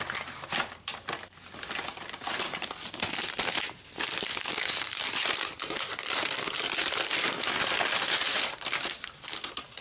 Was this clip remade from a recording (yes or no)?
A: yes